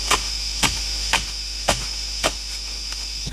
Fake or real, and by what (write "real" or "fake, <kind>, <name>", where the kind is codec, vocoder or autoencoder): fake, autoencoder, DAC-VAE